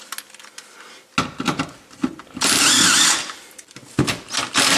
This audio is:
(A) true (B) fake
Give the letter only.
A